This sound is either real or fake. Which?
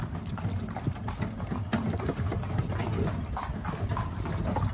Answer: real